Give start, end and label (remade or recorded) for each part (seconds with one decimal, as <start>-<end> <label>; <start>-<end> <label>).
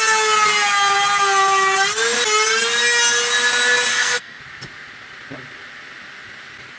0.0-3.9 recorded; 3.9-4.4 remade; 4.4-6.8 recorded